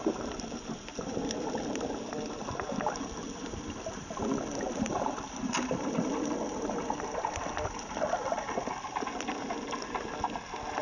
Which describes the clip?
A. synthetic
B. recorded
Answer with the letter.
B